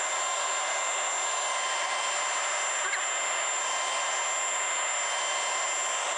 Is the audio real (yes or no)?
yes